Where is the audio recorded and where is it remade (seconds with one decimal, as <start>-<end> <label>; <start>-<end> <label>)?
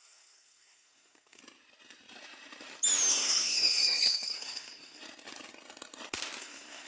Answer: 0.0-1.4 remade; 1.4-3.1 recorded; 3.1-5.0 remade; 5.0-6.4 recorded; 6.4-6.9 remade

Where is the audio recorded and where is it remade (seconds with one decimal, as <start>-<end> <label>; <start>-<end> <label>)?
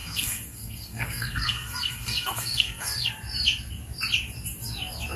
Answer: 0.0-3.1 remade; 3.1-5.2 recorded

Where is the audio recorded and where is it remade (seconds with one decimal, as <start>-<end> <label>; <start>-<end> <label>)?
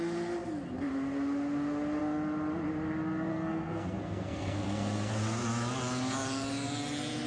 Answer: 0.0-3.3 recorded; 3.3-5.1 remade; 5.1-7.3 recorded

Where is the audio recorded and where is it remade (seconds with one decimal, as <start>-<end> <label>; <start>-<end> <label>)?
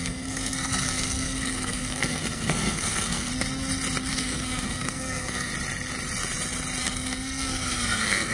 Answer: 0.0-3.3 remade; 3.3-4.1 recorded; 4.1-5.5 remade; 5.5-6.8 recorded; 6.8-8.3 remade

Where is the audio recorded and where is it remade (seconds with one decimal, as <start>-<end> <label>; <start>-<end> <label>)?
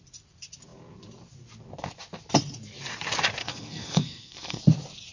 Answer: 0.0-3.4 recorded; 3.4-4.6 remade; 4.6-5.1 recorded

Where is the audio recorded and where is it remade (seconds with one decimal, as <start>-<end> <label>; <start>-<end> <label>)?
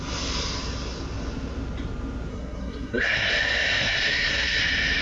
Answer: 0.0-2.3 recorded; 2.3-3.3 remade; 3.3-3.8 recorded; 3.8-4.6 remade; 4.6-5.0 recorded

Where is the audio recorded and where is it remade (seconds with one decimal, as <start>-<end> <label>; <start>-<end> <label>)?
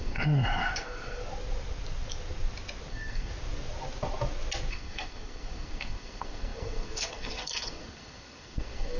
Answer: 0.0-1.2 remade; 1.2-2.9 recorded; 2.9-3.3 remade; 3.3-4.7 recorded; 4.7-9.0 remade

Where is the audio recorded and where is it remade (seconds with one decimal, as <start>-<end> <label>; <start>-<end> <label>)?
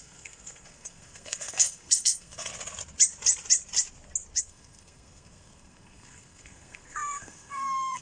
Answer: 0.0-2.5 remade; 2.5-4.4 recorded; 4.4-8.0 remade